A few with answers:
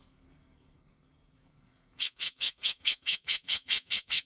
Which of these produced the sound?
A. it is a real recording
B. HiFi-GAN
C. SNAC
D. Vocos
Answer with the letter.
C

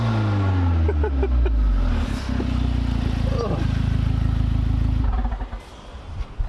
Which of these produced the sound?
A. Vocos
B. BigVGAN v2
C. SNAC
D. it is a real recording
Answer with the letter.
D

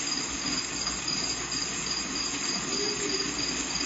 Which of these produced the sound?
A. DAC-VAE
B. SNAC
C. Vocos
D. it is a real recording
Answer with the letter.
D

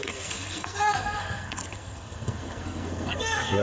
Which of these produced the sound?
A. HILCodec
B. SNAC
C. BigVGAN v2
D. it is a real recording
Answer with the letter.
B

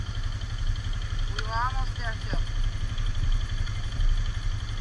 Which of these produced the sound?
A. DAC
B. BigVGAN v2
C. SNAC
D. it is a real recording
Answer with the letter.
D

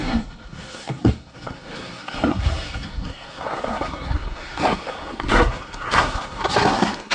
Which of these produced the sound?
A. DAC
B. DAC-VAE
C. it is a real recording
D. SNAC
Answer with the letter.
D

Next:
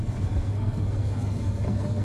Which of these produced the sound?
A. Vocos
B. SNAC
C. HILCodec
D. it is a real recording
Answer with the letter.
B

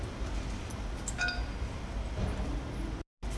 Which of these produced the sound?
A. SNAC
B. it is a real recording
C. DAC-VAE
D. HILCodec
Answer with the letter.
B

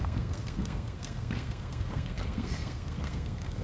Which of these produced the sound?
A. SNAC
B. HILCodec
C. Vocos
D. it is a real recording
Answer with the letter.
A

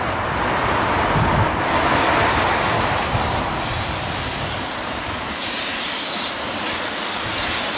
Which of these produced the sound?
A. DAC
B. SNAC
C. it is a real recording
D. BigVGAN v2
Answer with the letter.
C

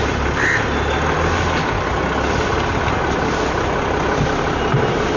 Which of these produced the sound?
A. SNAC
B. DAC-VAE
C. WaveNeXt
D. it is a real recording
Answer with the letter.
D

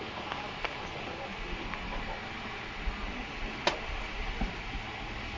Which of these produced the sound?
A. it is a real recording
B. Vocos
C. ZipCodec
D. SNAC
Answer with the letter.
A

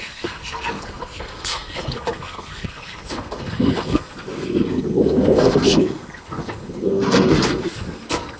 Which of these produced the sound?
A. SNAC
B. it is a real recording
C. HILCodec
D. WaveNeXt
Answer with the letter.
A